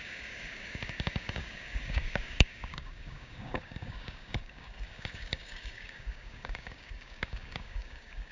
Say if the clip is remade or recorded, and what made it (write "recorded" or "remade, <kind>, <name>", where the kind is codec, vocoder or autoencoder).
remade, codec, DAC